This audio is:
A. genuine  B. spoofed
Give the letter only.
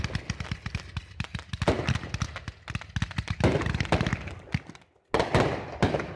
A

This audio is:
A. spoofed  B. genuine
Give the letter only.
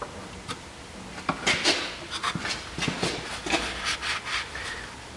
B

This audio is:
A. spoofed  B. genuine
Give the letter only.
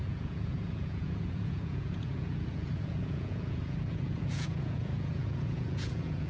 A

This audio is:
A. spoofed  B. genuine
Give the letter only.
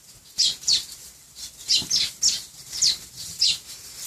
B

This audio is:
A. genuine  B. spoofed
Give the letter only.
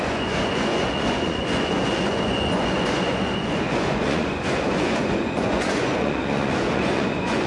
B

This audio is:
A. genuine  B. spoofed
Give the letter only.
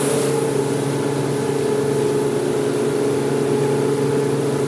A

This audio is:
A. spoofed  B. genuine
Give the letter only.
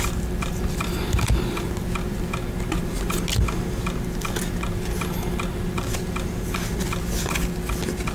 B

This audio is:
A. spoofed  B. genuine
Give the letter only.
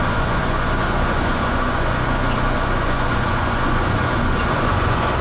A